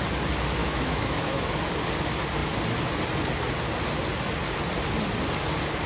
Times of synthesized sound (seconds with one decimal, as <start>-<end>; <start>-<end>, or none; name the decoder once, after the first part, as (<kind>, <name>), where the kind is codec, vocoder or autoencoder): 0.6-1.6 (autoencoder, DAC-VAE)

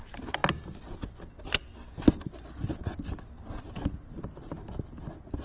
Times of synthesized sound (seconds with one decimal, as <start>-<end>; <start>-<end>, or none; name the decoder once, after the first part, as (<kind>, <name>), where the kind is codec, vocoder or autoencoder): none

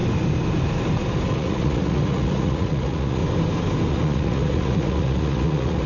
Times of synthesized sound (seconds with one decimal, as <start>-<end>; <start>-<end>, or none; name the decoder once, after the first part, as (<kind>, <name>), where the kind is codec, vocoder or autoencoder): 1.3-3.2 (vocoder, Vocos); 3.9-5.9

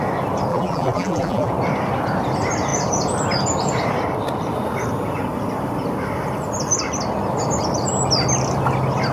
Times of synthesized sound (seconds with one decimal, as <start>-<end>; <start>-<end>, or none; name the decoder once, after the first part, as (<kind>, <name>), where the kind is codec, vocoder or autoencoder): 0.5-1.5 (vocoder, BigVGAN v2)

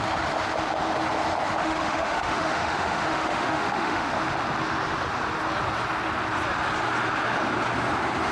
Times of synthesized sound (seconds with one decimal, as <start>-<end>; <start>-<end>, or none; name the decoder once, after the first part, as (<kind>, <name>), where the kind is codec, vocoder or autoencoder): 1.6-4.1 (autoencoder, DAC-VAE)

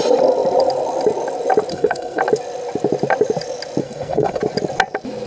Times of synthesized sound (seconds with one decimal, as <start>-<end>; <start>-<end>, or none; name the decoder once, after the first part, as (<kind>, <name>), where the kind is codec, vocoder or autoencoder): 1.7-2.2 (codec, SNAC); 3.8-4.4